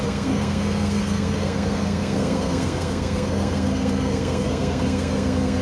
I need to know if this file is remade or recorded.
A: remade